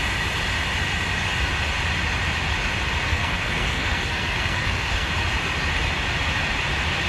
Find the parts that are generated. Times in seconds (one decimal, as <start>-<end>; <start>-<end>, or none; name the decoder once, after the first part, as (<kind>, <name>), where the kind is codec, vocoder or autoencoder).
3.1-5.1 (codec, SNAC)